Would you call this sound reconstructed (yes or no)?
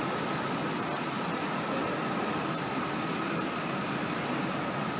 no